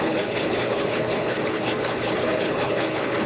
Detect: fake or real fake